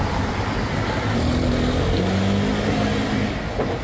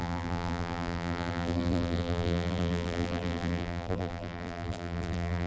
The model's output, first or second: second